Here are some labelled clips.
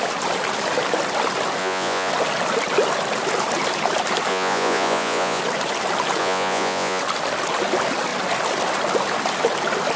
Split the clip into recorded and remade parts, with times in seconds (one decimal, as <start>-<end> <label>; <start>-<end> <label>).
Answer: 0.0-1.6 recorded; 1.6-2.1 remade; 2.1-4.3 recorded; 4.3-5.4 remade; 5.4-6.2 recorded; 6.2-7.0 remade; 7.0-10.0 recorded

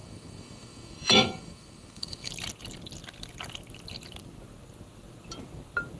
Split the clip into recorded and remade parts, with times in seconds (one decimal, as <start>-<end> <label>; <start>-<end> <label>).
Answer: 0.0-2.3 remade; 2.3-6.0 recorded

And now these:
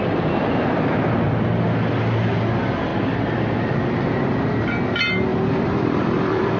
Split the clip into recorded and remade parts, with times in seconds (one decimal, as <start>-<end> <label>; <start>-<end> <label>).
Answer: 0.0-2.9 recorded; 2.9-3.4 remade; 3.4-5.3 recorded; 5.3-6.6 remade

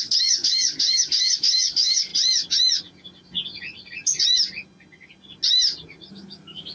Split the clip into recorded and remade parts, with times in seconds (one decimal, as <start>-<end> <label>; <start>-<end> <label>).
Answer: 0.0-2.1 remade; 2.1-6.1 recorded; 6.1-6.7 remade

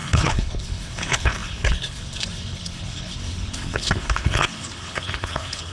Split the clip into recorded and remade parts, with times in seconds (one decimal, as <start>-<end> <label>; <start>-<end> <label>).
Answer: 0.0-5.7 remade

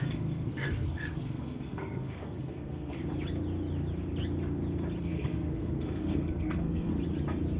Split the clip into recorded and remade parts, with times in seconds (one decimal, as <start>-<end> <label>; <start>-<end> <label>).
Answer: 0.0-3.0 remade; 3.0-5.0 recorded; 5.0-6.9 remade; 6.9-7.6 recorded

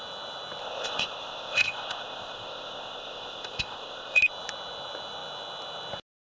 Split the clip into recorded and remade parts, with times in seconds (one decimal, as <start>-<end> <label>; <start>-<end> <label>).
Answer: 0.0-0.6 recorded; 0.6-4.2 remade; 4.2-6.2 recorded